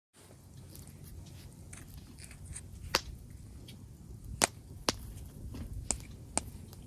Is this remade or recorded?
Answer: recorded